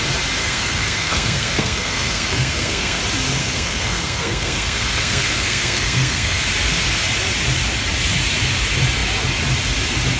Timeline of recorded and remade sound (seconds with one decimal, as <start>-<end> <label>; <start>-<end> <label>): 0.0-0.4 recorded; 0.4-3.0 remade; 3.0-3.4 recorded; 3.4-6.4 remade; 6.4-10.2 recorded